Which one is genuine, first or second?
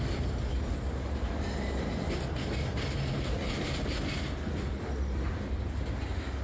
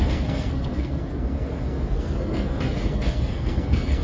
first